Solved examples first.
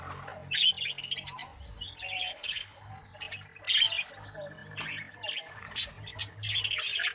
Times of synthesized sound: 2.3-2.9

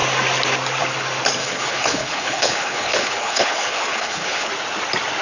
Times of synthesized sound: 1.4-4.5

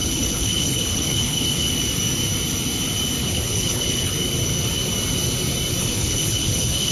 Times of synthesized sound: 0.0-1.7; 3.2-4.1; 5.8-6.9

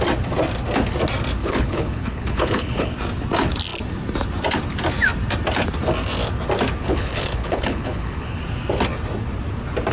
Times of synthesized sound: 1.4-2.9; 6.8-8.4

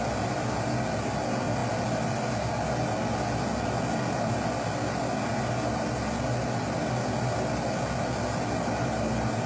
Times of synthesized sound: none

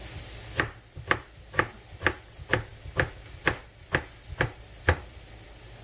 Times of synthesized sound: none

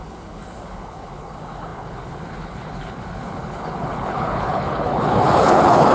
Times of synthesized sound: 0.0-5.9